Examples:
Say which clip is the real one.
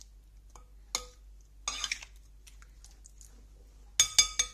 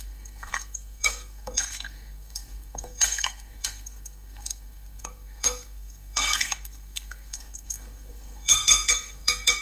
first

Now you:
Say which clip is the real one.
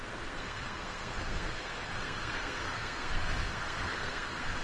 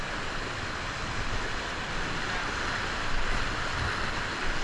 second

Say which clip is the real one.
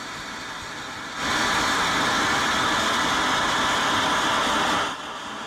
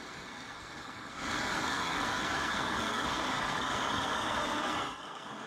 first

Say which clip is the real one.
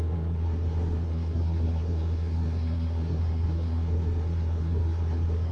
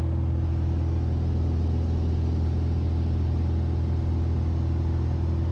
second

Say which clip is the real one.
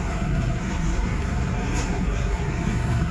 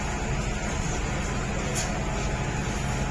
second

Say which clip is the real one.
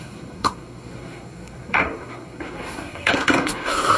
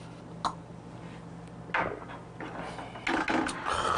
second